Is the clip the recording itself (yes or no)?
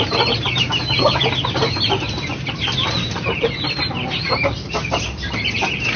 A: no